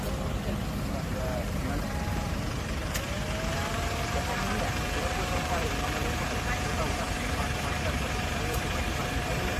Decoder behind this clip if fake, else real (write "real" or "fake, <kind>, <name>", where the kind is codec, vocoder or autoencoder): fake, vocoder, BigVGAN v2